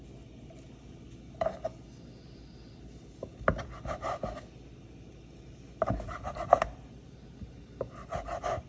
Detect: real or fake real